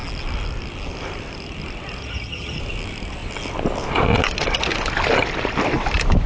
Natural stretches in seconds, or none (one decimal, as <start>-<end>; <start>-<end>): 0.0-2.0; 2.6-6.3